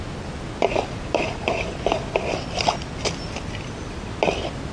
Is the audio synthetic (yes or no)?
no